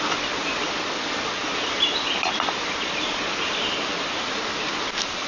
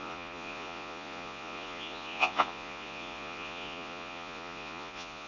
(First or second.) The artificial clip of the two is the second